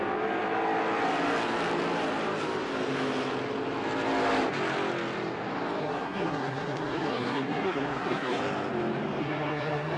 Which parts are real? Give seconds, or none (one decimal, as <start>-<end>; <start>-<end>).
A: 0.0-5.8; 8.4-9.2